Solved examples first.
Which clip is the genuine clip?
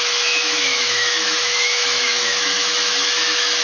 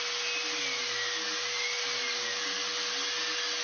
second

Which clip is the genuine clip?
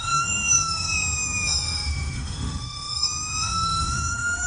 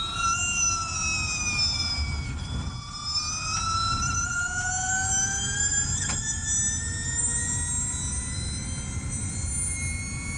second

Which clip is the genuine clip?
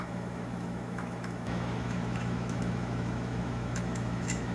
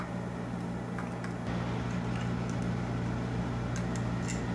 second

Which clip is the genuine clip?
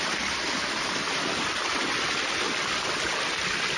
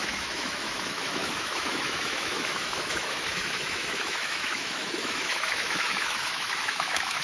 first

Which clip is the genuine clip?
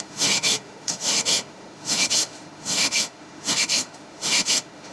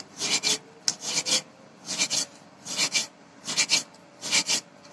second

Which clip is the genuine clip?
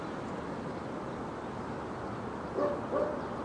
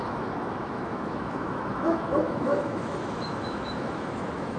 first